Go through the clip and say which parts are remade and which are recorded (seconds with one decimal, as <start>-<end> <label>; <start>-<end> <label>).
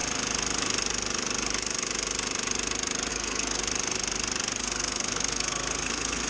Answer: 0.0-3.1 recorded; 3.1-3.6 remade; 3.6-4.6 recorded; 4.6-6.3 remade